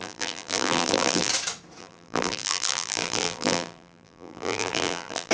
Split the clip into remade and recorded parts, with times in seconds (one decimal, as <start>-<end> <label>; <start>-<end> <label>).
0.0-1.3 remade; 1.3-1.8 recorded; 1.8-5.3 remade